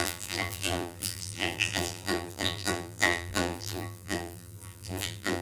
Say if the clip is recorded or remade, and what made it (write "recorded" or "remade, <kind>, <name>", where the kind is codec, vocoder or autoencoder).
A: remade, vocoder, BigVGAN v2